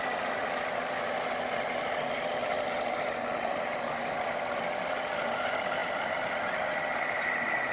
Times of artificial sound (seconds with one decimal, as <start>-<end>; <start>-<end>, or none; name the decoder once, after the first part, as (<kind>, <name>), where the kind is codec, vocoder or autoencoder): none